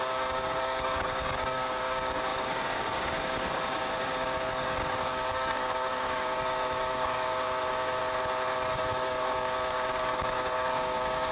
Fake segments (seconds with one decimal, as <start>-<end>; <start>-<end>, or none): 0.0-8.0; 8.7-11.3